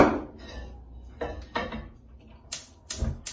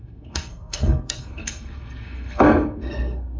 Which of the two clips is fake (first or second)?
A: second